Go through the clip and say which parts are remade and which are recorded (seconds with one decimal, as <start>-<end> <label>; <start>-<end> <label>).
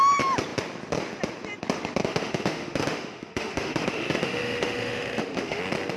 0.0-2.0 recorded; 2.0-5.6 remade; 5.6-6.0 recorded